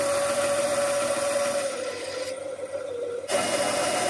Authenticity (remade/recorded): recorded